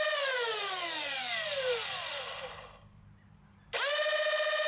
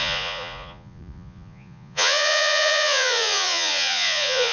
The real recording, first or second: first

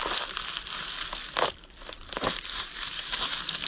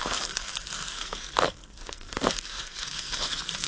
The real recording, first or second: first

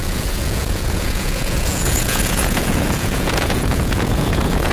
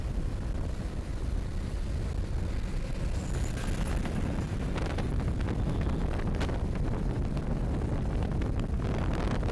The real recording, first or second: second